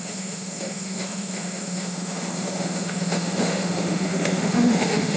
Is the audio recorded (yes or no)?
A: no